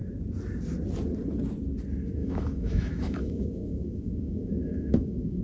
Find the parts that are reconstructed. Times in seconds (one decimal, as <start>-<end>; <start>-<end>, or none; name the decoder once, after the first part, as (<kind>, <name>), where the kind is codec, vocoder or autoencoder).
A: 2.2-5.4 (autoencoder, DAC-VAE)